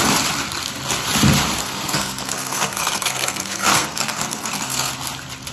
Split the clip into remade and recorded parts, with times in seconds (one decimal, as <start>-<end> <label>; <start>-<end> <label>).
0.0-1.6 recorded; 1.6-4.9 remade; 4.9-5.5 recorded

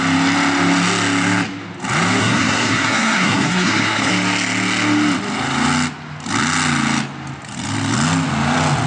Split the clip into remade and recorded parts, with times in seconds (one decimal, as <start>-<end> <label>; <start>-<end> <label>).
0.0-2.2 recorded; 2.2-4.1 remade; 4.1-8.9 recorded